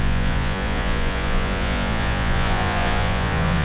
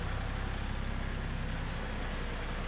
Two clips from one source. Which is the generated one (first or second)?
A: first